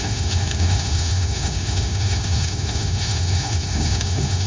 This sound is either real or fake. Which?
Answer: fake